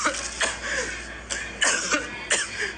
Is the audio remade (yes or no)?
no